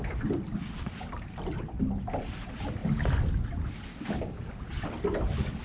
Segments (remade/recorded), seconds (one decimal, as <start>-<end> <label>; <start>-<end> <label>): 0.0-5.6 recorded